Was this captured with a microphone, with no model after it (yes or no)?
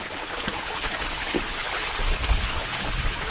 no